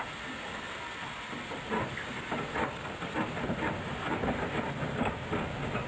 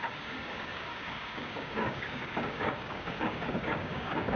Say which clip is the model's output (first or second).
second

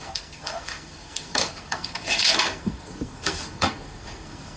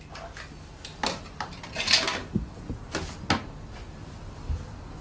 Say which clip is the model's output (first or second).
first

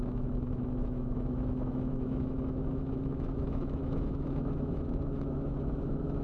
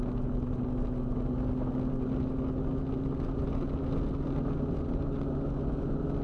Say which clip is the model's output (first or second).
first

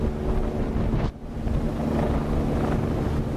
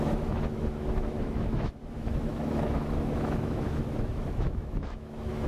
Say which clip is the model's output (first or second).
second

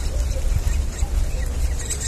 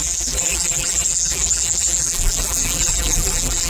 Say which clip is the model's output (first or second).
second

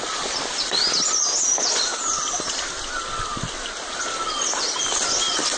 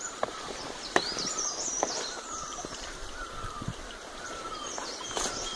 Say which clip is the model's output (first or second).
second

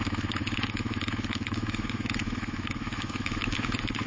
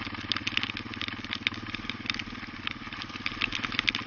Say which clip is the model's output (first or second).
first